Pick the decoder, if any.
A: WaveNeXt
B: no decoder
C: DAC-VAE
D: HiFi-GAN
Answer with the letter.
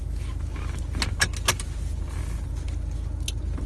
B